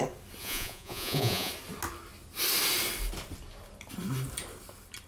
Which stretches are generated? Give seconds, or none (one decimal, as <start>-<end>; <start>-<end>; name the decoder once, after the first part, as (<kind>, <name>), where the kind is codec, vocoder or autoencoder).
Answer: 0.4-1.5 (vocoder, Vocos)